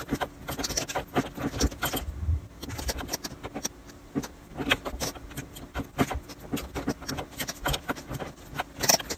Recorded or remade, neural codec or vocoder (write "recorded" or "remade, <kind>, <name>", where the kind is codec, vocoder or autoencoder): recorded